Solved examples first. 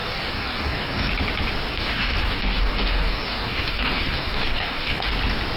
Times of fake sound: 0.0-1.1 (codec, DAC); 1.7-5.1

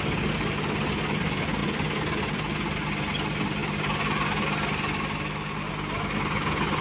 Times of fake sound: none

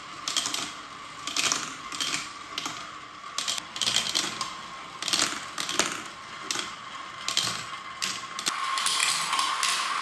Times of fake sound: none

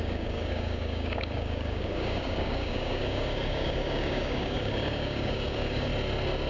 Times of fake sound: 0.0-5.9 (codec, DAC)

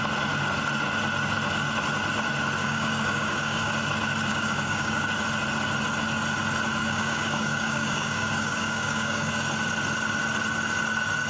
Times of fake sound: 2.6-3.7 (codec, DAC); 4.3-5.0; 6.8-9.3